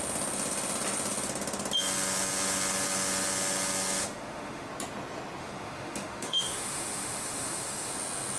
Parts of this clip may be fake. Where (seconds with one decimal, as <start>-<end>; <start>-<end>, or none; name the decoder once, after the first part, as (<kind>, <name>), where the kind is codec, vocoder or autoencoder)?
4.0-4.7 (autoencoder, DAC-VAE); 5.4-7.9